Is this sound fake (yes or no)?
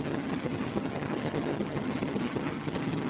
yes